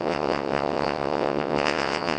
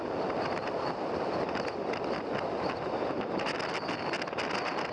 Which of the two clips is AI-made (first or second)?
first